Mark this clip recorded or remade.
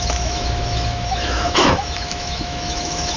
remade